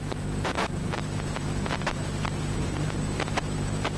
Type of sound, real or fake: fake